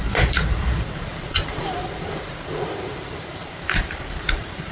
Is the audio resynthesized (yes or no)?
yes